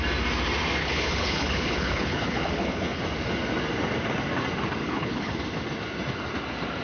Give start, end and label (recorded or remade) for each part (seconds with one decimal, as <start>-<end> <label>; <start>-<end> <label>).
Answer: 0.0-0.8 recorded; 0.8-3.0 remade; 3.0-4.8 recorded; 4.8-5.3 remade; 5.3-6.8 recorded